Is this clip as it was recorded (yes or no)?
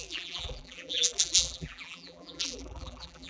no